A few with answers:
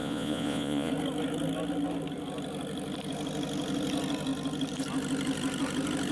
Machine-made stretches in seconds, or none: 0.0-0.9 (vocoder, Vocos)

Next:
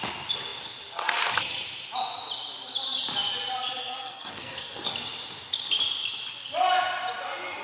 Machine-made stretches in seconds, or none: 3.8-4.9 (codec, SNAC)

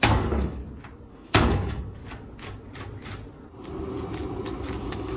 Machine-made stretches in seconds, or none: 0.0-0.6 (codec, DAC); 1.1-2.0; 4.8-5.2

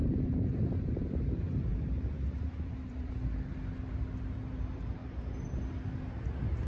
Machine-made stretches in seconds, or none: 1.7-3.1 (vocoder, BigVGAN v2); 5.0-5.6

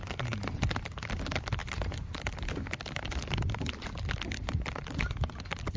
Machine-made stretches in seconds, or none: none

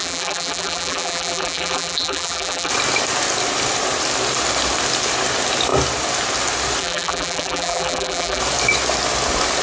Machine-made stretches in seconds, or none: 0.0-2.7 (vocoder, BigVGAN v2); 6.8-8.4

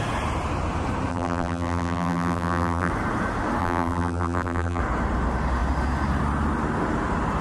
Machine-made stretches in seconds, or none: 1.1-2.9 (vocoder, BigVGAN v2); 3.6-4.8

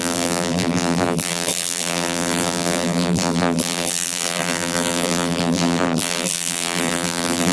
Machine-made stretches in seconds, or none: 0.0-7.5 (vocoder, BigVGAN v2)